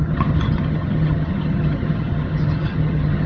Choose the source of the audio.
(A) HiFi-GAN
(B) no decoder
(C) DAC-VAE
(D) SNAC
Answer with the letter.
A